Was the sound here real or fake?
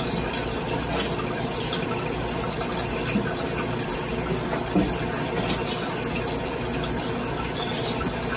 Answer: real